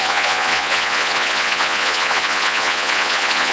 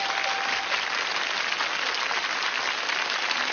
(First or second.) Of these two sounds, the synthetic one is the first